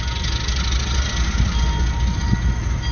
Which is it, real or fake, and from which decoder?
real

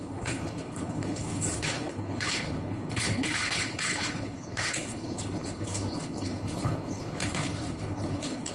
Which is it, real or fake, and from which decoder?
fake, codec, HILCodec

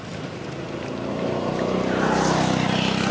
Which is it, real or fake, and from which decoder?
real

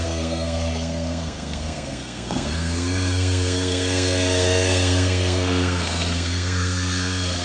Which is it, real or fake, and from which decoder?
fake, codec, SNAC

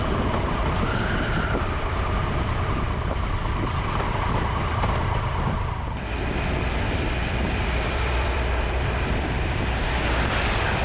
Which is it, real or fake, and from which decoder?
fake, vocoder, BigVGAN v2